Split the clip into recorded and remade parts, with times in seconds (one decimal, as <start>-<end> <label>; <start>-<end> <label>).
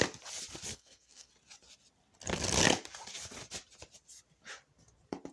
0.0-0.7 recorded; 0.7-1.3 remade; 1.3-5.3 recorded